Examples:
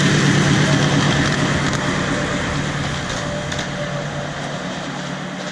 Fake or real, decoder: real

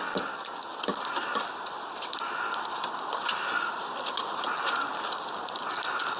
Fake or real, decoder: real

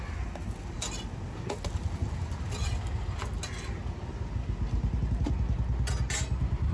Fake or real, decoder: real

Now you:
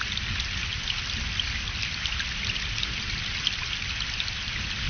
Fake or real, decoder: real